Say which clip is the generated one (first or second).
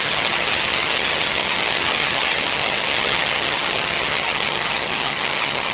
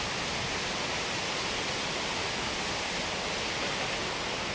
first